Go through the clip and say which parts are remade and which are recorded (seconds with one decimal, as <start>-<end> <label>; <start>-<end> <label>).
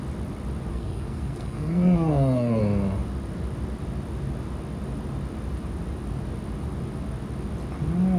0.0-0.7 recorded; 0.7-2.6 remade; 2.6-8.2 recorded